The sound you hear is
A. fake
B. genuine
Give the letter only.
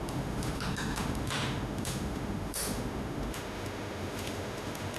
A